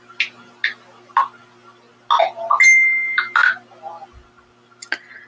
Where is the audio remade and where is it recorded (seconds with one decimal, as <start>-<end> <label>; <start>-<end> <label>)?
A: 0.0-5.3 recorded